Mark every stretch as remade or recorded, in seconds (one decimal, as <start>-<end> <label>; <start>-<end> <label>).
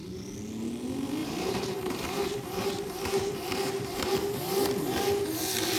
0.0-1.2 recorded; 1.2-4.7 remade; 4.7-5.8 recorded